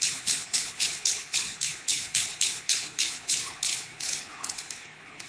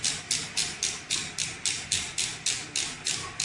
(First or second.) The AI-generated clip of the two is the first